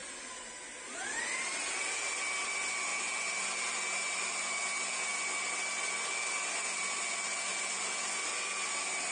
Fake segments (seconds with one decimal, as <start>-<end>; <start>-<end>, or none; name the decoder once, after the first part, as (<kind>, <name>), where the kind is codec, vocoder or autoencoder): 0.0-1.2 (vocoder, BigVGAN v2)